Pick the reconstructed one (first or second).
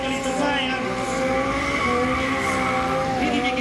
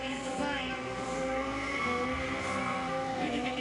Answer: second